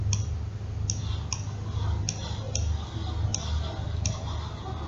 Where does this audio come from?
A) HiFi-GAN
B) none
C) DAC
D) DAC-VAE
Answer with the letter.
B